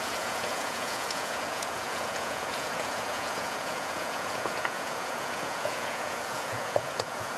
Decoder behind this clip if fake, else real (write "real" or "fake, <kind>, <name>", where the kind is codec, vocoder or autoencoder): fake, vocoder, Vocos